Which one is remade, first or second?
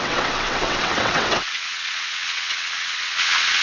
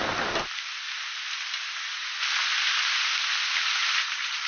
first